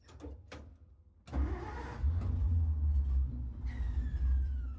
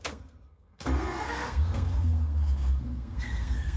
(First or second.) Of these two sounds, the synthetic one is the second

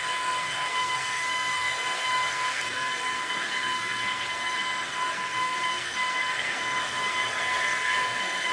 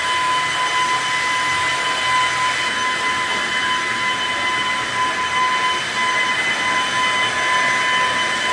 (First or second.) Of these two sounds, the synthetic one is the first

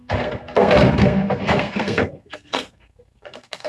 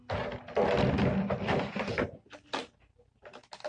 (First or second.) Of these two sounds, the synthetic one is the first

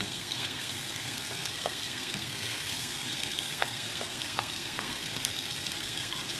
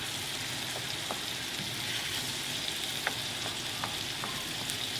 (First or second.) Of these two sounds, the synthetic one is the first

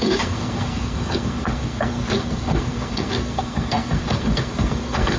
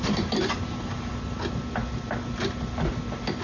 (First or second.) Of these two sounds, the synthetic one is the first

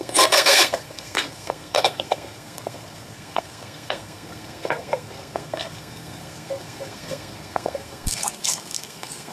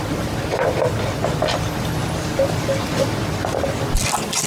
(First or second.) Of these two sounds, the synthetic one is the first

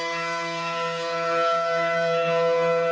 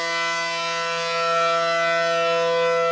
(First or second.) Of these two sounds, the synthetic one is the first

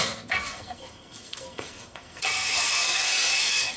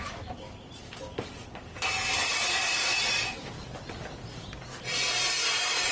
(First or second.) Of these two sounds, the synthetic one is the first